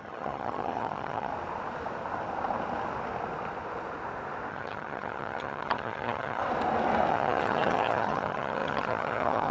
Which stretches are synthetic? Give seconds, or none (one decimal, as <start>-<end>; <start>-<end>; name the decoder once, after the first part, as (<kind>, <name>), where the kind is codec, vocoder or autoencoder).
0.0-1.3 (vocoder, HiFi-GAN); 4.5-6.4; 7.1-9.5